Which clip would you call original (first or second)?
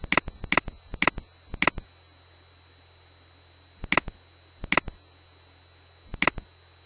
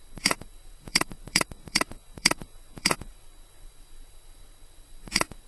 first